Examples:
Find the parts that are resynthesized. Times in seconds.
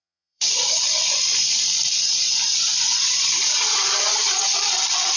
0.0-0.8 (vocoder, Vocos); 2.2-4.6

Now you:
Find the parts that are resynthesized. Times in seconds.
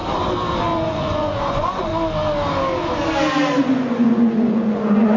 0.6-1.9 (vocoder, Vocos); 3.6-5.2